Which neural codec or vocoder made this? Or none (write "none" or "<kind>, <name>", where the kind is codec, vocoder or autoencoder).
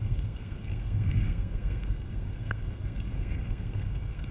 codec, SNAC